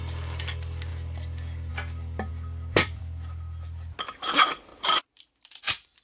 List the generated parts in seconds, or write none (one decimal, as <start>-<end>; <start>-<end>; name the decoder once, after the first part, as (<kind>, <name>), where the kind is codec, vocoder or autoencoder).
2.3-3.0 (vocoder, BigVGAN v2)